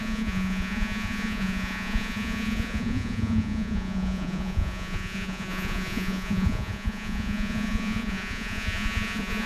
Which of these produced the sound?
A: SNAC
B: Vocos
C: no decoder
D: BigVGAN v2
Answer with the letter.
B